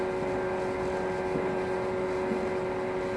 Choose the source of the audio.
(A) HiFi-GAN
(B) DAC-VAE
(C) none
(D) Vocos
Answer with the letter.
C